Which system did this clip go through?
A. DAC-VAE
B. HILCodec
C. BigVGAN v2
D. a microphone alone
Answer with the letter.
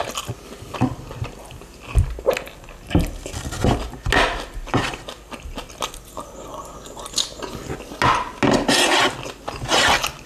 D